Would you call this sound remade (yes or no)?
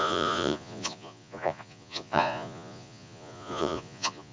yes